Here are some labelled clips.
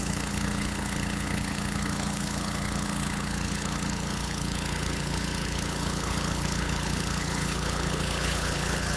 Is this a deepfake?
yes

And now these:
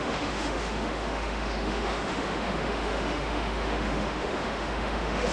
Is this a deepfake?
yes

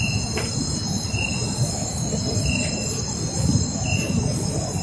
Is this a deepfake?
no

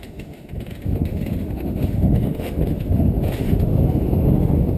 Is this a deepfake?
yes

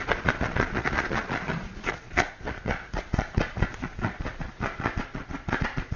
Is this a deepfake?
yes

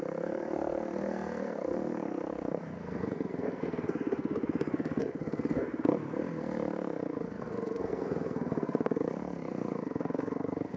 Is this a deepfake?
yes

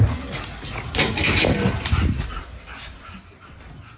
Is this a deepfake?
no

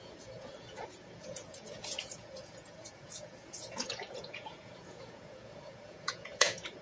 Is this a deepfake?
yes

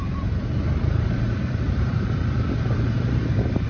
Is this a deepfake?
yes